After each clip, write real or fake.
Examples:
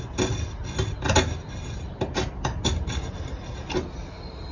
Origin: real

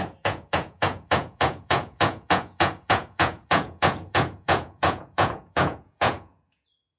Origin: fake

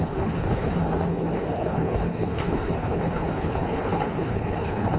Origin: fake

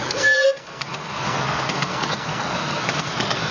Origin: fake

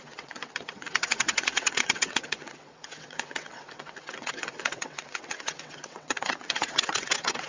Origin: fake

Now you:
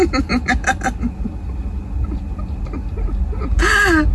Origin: real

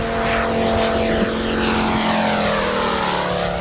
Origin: real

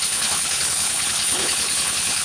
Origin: fake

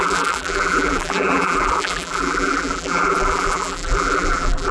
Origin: fake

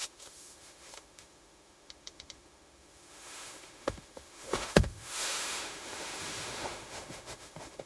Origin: fake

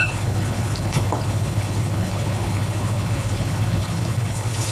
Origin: fake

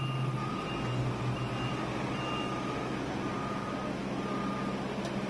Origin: real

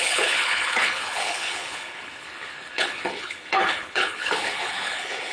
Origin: fake